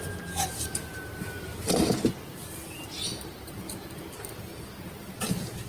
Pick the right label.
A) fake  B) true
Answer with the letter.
B